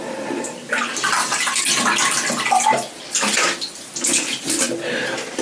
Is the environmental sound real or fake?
real